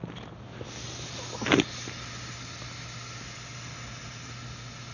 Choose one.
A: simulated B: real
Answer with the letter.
B